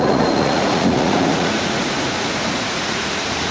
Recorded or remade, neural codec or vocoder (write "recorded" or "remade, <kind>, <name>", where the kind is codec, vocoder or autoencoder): remade, vocoder, Vocos